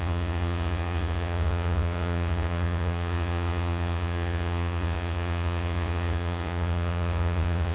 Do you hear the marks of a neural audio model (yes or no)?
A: yes